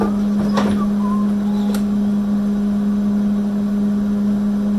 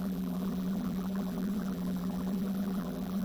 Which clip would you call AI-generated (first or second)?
second